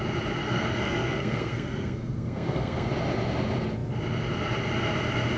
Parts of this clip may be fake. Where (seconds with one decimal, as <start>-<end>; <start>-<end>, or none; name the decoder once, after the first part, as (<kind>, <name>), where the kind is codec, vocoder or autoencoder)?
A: 0.4-2.9 (codec, SNAC)